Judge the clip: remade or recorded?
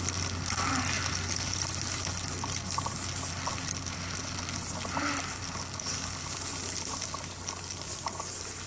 recorded